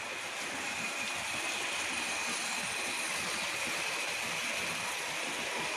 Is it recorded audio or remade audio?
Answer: recorded